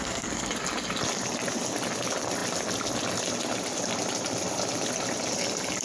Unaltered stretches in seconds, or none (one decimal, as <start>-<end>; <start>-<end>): 0.5-5.8